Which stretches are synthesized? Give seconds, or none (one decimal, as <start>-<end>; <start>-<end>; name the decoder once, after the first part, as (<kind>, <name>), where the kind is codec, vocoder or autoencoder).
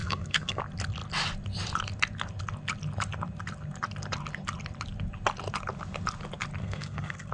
0.0-0.6 (codec, SNAC); 6.6-7.3